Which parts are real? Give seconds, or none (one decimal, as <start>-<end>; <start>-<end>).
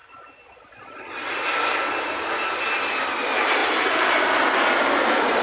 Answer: 0.0-5.4